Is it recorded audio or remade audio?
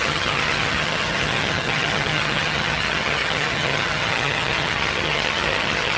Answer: remade